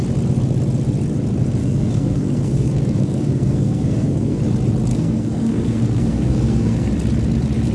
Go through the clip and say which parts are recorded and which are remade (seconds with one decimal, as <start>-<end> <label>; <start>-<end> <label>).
0.0-1.6 recorded; 1.6-4.4 remade; 4.4-4.9 recorded; 4.9-6.9 remade; 6.9-7.7 recorded